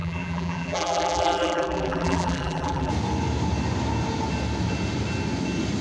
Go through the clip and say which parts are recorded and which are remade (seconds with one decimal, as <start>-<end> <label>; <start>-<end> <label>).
0.0-2.9 remade; 2.9-5.8 recorded